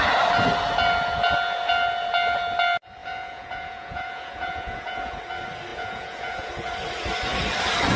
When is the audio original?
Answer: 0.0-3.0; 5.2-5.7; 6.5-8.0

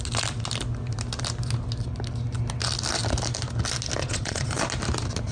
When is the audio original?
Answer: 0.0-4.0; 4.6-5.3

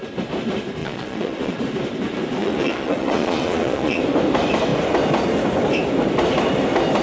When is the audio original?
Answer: 0.0-0.8; 1.6-2.4; 4.0-7.0

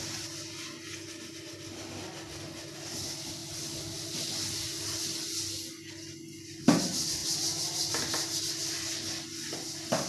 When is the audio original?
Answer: 0.0-10.1

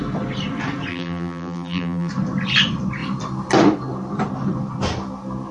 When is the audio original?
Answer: 0.0-0.9; 2.1-5.5

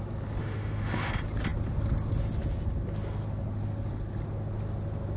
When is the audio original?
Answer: 0.0-0.4; 1.1-5.2

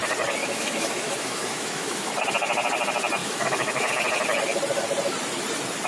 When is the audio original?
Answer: 0.0-0.4; 2.1-3.2; 3.9-5.9

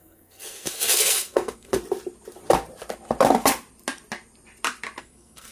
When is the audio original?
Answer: 1.7-5.0